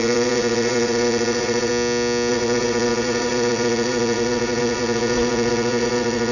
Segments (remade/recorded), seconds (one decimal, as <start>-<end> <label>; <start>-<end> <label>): 0.0-1.7 remade; 1.7-2.3 recorded; 2.3-6.3 remade

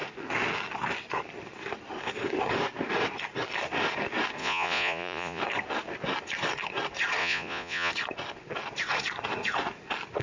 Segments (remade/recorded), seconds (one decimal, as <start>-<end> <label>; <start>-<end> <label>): 0.0-4.4 recorded; 4.4-5.4 remade; 5.4-7.2 recorded; 7.2-7.9 remade; 7.9-10.2 recorded

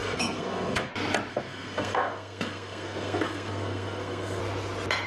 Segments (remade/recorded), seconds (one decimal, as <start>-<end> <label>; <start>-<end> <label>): 0.0-0.9 remade; 0.9-1.3 recorded; 1.3-4.4 remade; 4.4-5.1 recorded

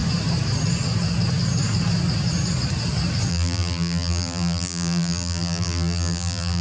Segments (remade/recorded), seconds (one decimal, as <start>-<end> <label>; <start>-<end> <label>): 0.0-3.3 recorded; 3.3-6.6 remade